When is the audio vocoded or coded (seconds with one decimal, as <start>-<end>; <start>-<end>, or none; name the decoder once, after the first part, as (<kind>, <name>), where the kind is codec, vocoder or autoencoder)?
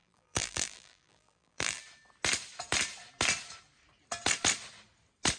0.0-1.8 (vocoder, BigVGAN v2)